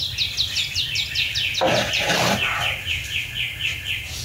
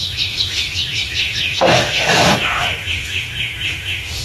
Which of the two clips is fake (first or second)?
second